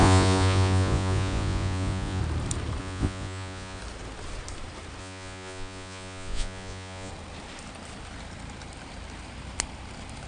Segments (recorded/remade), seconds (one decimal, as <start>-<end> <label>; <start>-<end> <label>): 0.0-2.2 remade; 2.2-2.8 recorded; 2.8-3.8 remade; 3.8-5.0 recorded; 5.0-7.1 remade; 7.1-10.3 recorded